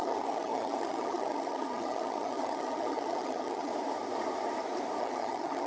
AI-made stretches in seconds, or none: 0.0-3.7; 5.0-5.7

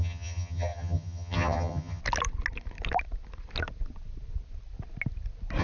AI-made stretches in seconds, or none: 0.0-2.0

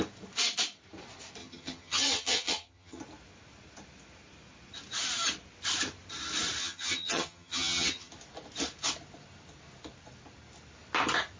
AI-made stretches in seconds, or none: 1.4-3.0; 6.6-8.1

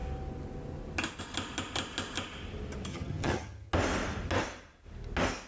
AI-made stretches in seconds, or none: 2.9-3.7